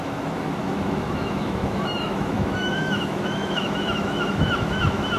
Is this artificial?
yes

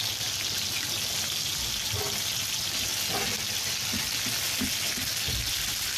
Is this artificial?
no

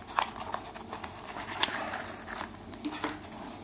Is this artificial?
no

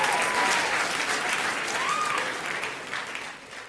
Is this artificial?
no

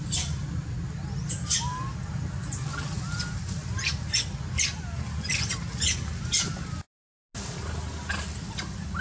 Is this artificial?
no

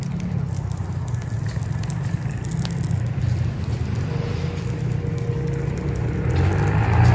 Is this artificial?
no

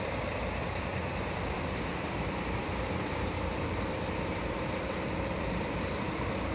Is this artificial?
yes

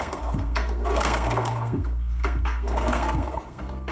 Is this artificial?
yes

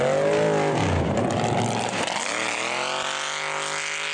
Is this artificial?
no